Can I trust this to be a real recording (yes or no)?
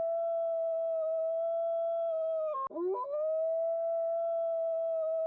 yes